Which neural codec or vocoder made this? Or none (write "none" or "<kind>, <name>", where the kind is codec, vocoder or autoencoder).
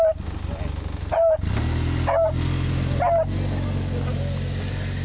none